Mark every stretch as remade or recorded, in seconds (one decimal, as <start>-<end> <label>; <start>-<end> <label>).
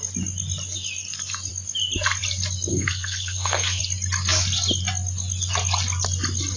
0.0-2.7 recorded; 2.7-3.8 remade; 3.8-6.6 recorded